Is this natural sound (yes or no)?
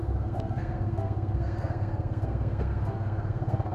no